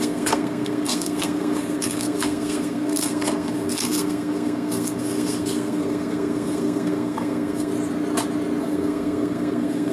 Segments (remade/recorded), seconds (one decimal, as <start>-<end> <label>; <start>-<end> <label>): 0.0-7.7 remade; 7.7-8.6 recorded; 8.6-9.9 remade